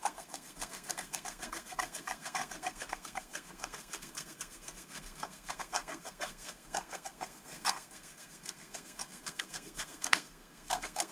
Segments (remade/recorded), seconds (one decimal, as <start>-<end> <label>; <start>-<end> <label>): 0.0-11.1 remade